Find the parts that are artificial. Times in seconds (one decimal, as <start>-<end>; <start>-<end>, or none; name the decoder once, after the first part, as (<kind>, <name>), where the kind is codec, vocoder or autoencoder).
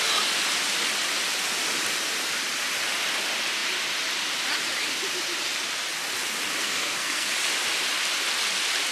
6.6-7.3 (codec, SNAC)